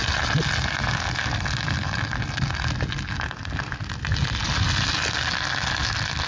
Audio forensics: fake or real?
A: real